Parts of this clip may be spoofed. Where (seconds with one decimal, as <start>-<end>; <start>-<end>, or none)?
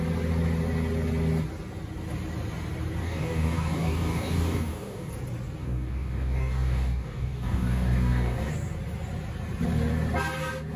3.0-5.1; 5.6-8.5